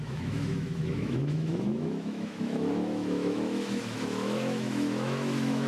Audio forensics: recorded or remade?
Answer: remade